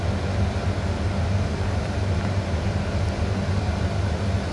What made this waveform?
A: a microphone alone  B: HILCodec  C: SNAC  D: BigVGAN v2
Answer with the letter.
A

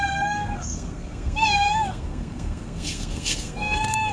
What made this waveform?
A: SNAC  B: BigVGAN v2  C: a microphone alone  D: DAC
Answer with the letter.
A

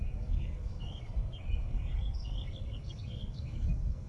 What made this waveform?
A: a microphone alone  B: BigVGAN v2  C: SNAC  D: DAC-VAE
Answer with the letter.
C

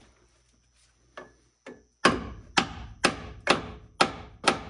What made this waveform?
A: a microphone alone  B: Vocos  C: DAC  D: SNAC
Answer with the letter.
A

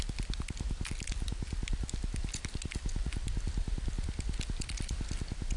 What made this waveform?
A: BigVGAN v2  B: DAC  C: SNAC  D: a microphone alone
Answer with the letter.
D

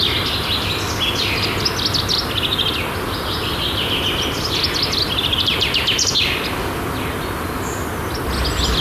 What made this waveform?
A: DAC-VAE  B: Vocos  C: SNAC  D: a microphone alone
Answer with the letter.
D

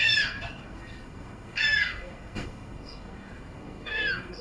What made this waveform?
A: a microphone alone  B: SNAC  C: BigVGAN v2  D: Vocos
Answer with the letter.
B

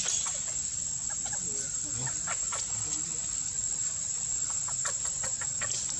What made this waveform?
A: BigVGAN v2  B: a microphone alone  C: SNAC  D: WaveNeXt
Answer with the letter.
B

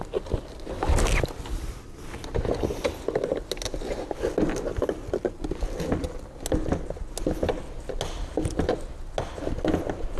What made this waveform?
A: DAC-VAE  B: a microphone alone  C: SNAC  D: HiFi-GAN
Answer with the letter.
B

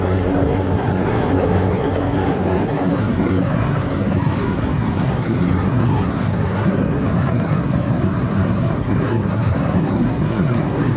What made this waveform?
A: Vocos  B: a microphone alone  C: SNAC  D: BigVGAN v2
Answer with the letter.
C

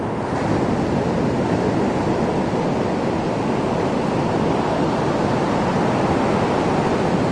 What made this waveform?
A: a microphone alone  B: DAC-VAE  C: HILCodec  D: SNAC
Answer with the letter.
A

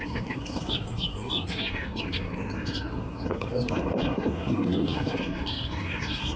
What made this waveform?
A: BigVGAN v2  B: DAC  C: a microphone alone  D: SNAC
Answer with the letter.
D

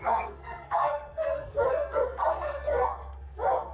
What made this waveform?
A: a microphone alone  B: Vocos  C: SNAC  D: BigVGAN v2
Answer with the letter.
C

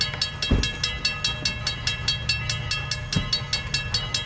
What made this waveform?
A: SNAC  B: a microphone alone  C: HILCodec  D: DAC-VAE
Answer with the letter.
B